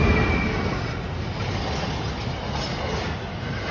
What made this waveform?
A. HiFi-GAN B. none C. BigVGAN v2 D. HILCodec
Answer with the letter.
B